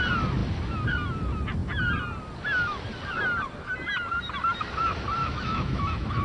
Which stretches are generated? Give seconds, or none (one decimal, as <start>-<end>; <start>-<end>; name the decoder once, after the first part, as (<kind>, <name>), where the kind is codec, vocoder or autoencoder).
5.2-6.2 (autoencoder, DAC-VAE)